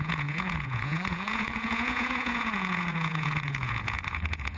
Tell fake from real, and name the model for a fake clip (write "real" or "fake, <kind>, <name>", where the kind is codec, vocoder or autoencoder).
fake, vocoder, Vocos